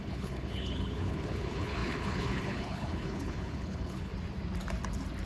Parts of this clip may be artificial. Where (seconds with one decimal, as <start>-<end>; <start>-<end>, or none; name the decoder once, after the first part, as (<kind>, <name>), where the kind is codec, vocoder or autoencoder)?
0.0-4.1 (codec, HILCodec)